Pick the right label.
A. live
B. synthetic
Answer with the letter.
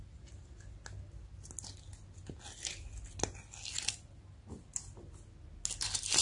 A